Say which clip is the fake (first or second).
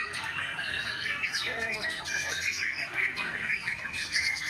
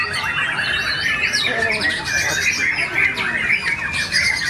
first